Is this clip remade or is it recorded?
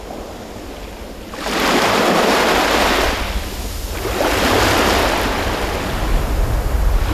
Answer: recorded